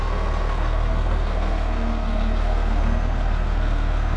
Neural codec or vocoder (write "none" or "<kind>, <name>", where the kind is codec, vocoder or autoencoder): codec, SNAC